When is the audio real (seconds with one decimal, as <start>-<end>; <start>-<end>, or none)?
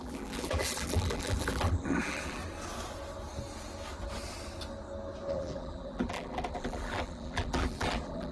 2.4-5.3